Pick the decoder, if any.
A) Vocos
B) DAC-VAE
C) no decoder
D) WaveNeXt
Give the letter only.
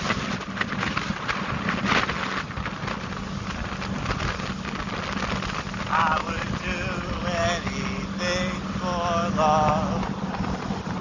C